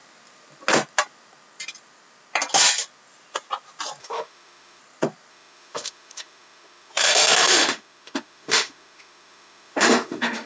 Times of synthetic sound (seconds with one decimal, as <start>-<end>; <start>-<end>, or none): 4.0-4.8; 5.3-10.5

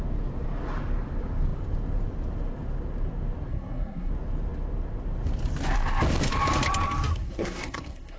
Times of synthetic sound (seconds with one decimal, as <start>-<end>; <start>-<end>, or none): 3.5-4.1; 7.1-8.2